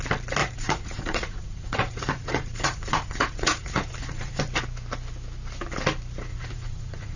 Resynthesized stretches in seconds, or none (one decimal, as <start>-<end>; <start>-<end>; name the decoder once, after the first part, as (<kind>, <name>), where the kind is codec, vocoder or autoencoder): 0.4-4.4 (vocoder, Vocos); 6.3-7.2